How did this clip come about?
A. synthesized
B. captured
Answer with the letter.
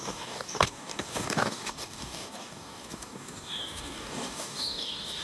A